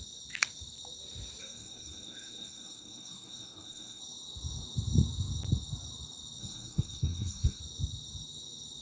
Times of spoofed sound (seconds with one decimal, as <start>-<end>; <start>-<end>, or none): 1.4-4.0; 6.4-7.6